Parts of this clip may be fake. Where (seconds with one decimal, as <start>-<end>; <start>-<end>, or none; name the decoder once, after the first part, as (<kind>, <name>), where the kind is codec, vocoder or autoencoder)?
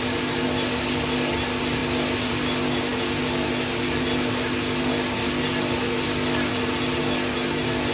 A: none